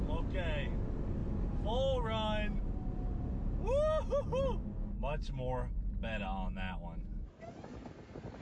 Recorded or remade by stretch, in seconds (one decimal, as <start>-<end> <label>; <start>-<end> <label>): 0.0-8.4 recorded